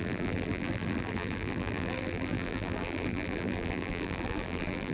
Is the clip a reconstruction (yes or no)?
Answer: yes